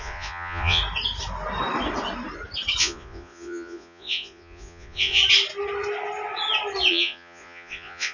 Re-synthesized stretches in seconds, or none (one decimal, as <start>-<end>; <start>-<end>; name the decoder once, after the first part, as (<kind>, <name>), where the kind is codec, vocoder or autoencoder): 0.0-0.8 (vocoder, Vocos); 2.8-5.2; 6.9-8.1